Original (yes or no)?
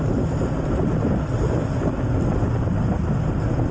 yes